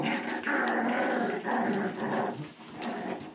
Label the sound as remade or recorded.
recorded